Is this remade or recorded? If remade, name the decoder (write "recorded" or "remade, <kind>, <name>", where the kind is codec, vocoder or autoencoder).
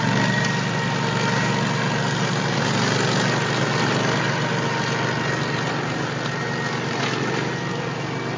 recorded